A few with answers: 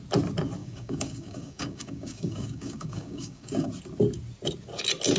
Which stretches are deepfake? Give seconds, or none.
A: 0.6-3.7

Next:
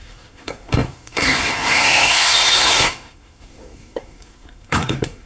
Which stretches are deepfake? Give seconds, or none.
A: 0.0-5.3

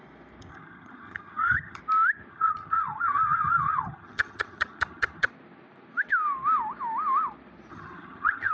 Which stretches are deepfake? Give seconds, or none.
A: 0.5-1.8; 2.3-5.3; 7.7-8.5